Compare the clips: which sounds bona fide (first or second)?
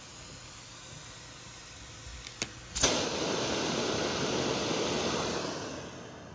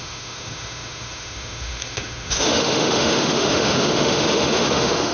first